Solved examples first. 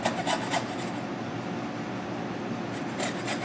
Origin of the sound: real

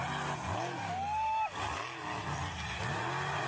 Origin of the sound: real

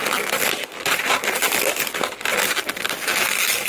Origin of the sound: real